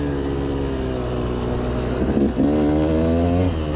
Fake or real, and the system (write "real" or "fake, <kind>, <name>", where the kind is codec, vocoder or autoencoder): real